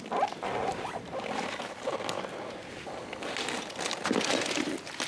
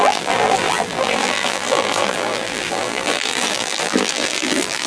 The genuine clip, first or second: first